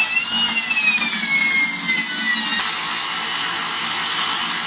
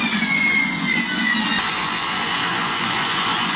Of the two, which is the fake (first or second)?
second